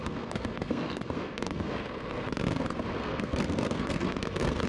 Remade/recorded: remade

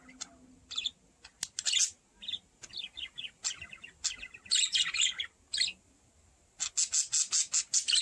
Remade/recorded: recorded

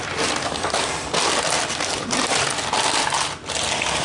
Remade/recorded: recorded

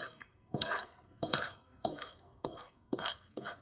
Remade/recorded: remade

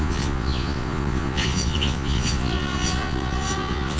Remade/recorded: remade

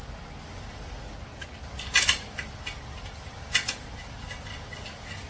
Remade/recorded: recorded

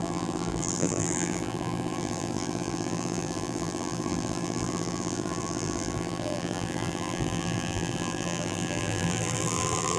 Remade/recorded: remade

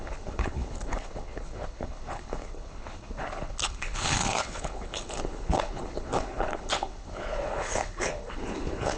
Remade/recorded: remade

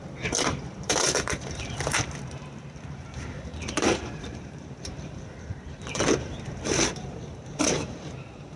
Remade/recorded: remade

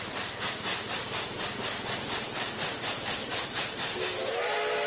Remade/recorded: recorded